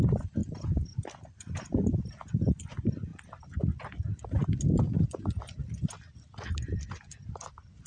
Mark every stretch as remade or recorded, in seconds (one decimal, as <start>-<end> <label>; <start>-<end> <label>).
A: 0.0-7.9 remade